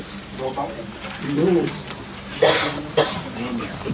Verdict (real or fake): real